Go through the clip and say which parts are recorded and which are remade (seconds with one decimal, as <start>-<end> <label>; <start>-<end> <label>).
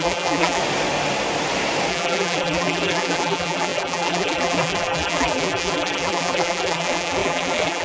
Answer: 0.0-0.6 remade; 0.6-1.9 recorded; 1.9-7.8 remade